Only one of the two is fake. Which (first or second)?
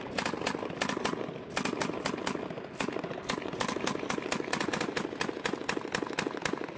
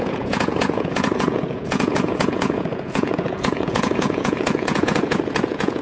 second